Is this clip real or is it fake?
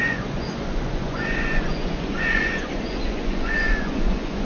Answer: fake